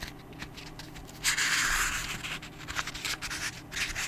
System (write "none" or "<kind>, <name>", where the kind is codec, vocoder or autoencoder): none